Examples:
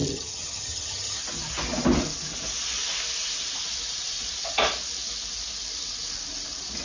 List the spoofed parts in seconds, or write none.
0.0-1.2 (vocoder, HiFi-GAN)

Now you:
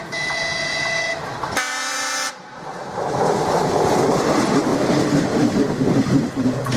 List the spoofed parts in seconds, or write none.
1.9-3.0 (vocoder, BigVGAN v2); 4.7-5.7

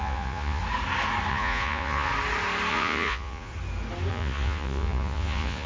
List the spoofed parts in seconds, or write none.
0.0-0.6 (vocoder, Vocos); 1.3-2.1; 2.7-3.5; 4.1-5.7

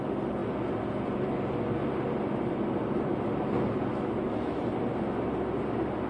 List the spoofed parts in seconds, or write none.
3.9-4.6 (autoencoder, DAC-VAE)

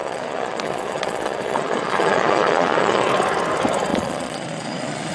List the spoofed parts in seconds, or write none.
0.0-3.1 (vocoder, Vocos); 3.9-5.1

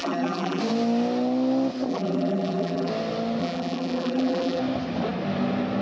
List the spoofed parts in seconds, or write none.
0.0-0.6 (vocoder, BigVGAN v2); 1.9-2.9; 3.4-4.6